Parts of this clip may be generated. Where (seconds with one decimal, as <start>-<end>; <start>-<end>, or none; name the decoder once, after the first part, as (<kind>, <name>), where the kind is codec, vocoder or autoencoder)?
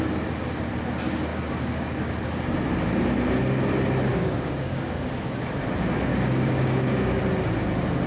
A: 1.3-2.1 (codec, DAC); 4.1-5.1; 6.1-7.2